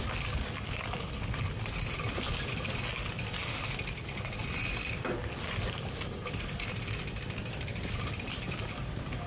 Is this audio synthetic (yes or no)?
no